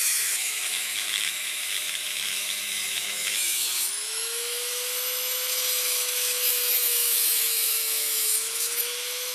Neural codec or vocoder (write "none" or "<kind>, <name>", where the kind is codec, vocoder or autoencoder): autoencoder, DAC-VAE